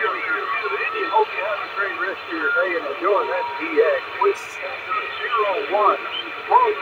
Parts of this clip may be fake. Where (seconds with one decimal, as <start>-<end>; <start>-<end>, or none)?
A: 0.0-6.8